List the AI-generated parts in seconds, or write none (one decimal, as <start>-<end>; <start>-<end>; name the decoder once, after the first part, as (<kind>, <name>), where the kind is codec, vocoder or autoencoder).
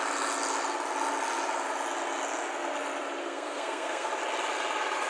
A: 3.2-4.1 (codec, SNAC)